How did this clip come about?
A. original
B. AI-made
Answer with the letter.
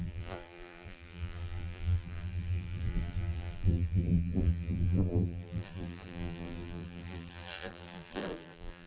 B